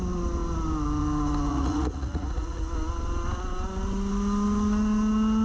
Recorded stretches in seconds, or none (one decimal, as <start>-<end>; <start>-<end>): 0.0-1.5; 2.6-5.4